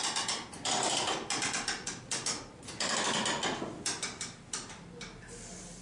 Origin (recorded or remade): recorded